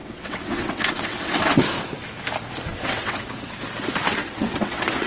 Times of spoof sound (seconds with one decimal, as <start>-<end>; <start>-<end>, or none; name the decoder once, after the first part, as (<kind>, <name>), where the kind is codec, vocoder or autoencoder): 0.0-1.6 (vocoder, WaveNeXt); 2.7-3.3; 4.2-5.1